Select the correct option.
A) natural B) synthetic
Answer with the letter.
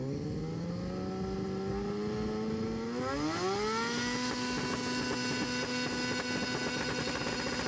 A